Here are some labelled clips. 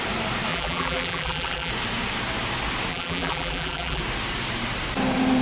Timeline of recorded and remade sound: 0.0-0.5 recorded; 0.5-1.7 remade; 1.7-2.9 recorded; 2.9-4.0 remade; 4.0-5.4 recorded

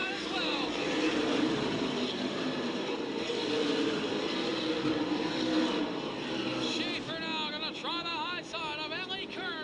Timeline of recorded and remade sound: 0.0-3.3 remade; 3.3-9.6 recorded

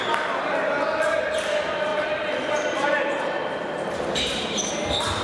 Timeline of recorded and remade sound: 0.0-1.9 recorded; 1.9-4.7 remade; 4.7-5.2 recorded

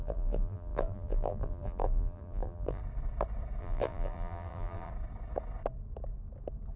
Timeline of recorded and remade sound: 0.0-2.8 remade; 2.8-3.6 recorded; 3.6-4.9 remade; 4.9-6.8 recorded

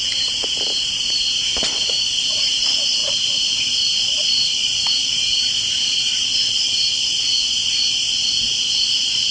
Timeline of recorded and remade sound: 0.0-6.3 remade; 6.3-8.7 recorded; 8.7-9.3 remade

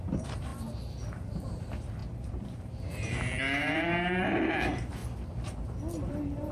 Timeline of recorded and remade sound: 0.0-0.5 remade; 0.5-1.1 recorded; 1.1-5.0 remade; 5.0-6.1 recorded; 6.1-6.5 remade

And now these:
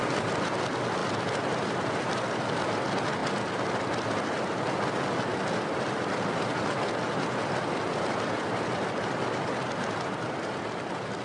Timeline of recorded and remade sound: 0.0-1.0 recorded; 1.0-2.4 remade; 2.4-5.3 recorded; 5.3-9.8 remade; 9.8-11.2 recorded